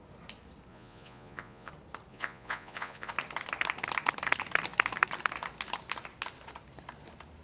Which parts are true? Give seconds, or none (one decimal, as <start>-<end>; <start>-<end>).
0.0-0.7; 1.7-2.1; 3.1-7.4